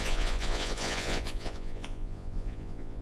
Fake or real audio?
fake